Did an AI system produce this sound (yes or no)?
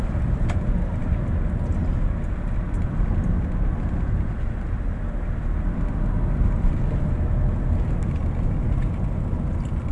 no